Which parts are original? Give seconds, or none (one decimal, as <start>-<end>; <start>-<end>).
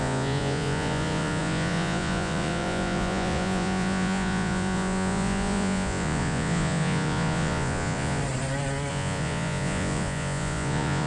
8.2-8.9